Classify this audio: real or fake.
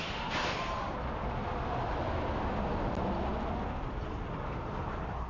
real